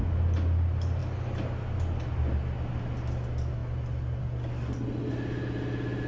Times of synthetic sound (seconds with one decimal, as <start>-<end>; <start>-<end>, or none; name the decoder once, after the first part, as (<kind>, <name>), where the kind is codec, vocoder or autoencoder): none